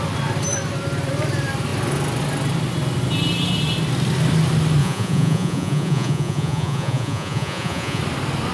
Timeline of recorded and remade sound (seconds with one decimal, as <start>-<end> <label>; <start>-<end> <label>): 0.0-4.8 recorded; 4.8-8.0 remade; 8.0-8.5 recorded